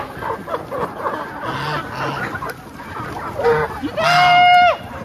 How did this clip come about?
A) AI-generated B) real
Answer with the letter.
B